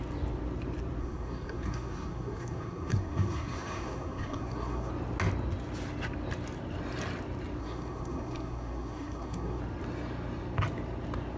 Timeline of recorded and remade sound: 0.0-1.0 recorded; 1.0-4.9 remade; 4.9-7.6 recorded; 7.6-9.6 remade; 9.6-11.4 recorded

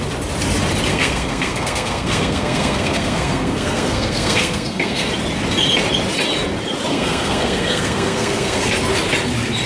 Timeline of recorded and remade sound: 0.0-0.9 recorded; 0.9-5.1 remade; 5.1-6.9 recorded; 6.9-8.7 remade; 8.7-9.7 recorded

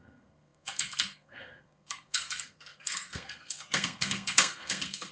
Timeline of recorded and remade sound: 0.0-5.1 remade

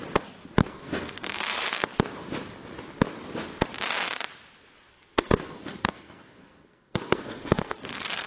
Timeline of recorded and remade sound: 0.0-0.6 recorded; 0.6-1.9 remade; 1.9-4.9 recorded; 4.9-8.3 remade

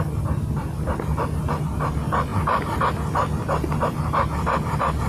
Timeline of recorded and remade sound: 0.0-5.1 recorded